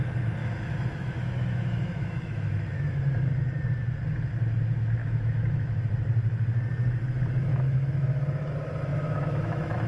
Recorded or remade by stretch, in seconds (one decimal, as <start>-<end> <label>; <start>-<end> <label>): 0.0-0.4 recorded; 0.4-3.0 remade; 3.0-5.0 recorded; 5.0-5.8 remade; 5.8-7.5 recorded; 7.5-8.5 remade; 8.5-8.9 recorded; 8.9-9.9 remade